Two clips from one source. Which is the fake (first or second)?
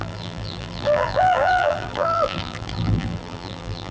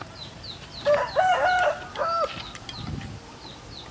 first